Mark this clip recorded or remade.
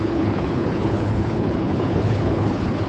remade